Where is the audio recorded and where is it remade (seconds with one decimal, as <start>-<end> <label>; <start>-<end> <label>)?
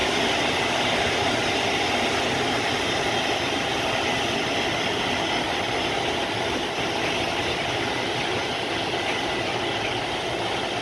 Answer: 0.0-10.8 recorded